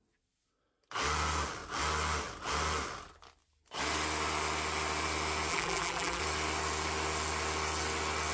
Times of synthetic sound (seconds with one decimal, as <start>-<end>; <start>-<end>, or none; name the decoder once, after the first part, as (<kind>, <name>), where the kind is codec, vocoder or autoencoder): 5.5-6.2 (vocoder, BigVGAN v2)